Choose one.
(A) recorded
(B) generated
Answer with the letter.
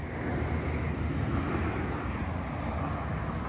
A